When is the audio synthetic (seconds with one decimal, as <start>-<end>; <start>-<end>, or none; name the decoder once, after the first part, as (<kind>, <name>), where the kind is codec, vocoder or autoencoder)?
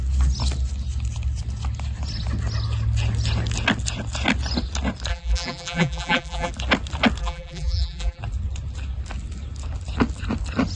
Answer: 5.1-6.5 (vocoder, BigVGAN v2); 7.2-8.2